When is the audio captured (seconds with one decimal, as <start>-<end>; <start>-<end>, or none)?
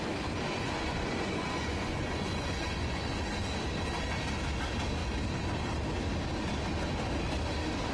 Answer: 0.0-0.5; 3.2-7.9